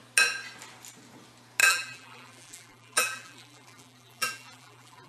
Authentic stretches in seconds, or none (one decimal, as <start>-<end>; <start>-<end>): 0.0-1.6